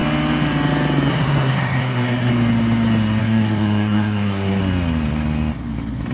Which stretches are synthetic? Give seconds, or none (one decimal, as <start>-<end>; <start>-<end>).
1.1-2.3; 3.2-4.6

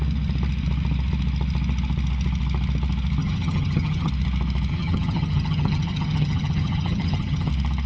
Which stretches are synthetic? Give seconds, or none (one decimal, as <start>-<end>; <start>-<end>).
3.2-4.1; 4.7-7.5

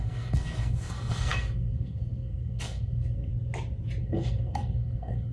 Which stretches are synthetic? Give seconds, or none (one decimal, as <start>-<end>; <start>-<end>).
0.0-3.3; 4.0-5.3

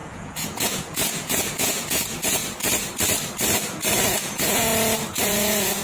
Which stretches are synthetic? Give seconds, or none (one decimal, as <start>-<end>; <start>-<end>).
0.0-2.4; 4.1-4.7; 5.2-5.8

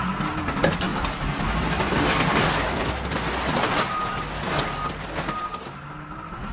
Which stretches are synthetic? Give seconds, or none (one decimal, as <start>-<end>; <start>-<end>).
none

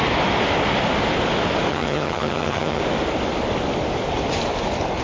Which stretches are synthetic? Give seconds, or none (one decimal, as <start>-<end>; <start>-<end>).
1.7-2.8